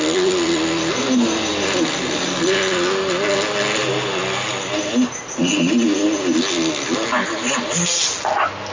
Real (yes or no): yes